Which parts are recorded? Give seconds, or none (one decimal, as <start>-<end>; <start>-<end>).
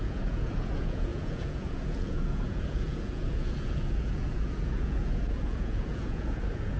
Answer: none